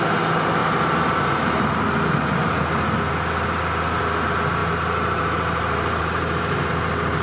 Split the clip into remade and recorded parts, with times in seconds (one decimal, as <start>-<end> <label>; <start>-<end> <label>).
0.0-4.6 recorded; 4.6-6.7 remade; 6.7-7.2 recorded